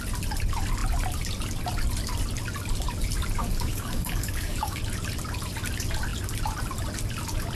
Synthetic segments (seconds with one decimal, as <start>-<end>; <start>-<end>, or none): 3.4-4.8